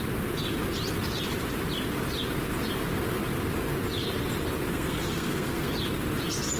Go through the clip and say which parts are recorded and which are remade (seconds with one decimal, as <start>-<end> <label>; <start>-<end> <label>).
0.0-4.7 recorded; 4.7-5.7 remade; 5.7-6.6 recorded